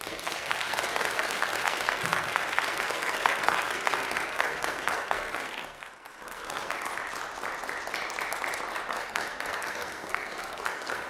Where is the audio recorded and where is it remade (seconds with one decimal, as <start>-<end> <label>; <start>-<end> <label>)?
0.0-6.9 remade; 6.9-8.9 recorded; 8.9-11.1 remade